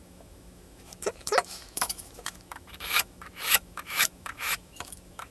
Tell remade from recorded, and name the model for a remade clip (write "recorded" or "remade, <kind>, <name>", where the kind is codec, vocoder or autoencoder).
remade, autoencoder, DAC-VAE